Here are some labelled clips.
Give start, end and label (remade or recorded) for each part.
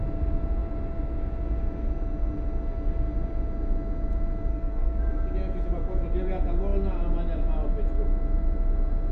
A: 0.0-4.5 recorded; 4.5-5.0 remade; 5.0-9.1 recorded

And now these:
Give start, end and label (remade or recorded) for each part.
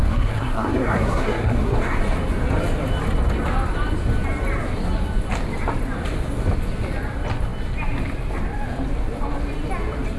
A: 0.0-2.0 remade; 2.0-10.2 recorded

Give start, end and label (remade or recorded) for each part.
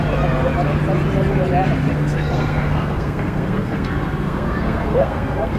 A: 0.0-1.9 recorded; 1.9-5.6 remade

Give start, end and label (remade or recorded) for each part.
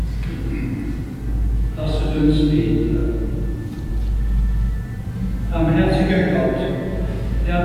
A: 0.0-3.0 recorded; 3.0-3.9 remade; 3.9-7.6 recorded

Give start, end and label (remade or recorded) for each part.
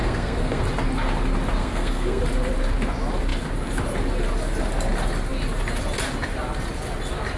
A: 0.0-0.6 remade; 0.6-1.6 recorded; 1.6-2.2 remade; 2.2-7.4 recorded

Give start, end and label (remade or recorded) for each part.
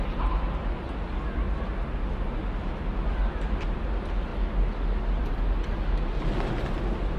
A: 0.0-7.2 recorded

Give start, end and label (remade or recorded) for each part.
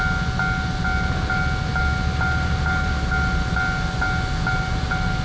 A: 0.0-5.2 recorded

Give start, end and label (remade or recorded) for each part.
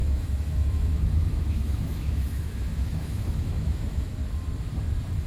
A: 0.0-4.2 remade; 4.2-5.3 recorded